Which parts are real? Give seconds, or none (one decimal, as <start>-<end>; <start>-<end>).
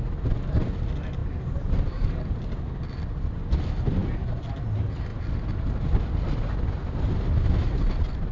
0.0-1.2; 2.2-8.3